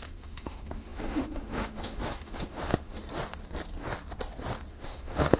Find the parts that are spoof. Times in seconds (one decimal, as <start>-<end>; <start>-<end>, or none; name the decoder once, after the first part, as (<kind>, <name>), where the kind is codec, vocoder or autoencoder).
0.0-3.0 (autoencoder, DAC-VAE); 4.7-5.4